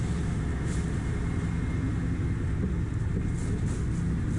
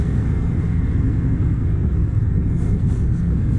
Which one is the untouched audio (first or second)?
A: first